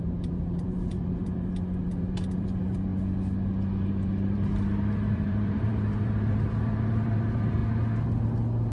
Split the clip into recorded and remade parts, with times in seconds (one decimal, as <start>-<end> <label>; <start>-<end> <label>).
0.0-2.9 remade; 2.9-3.9 recorded; 3.9-7.6 remade; 7.6-8.7 recorded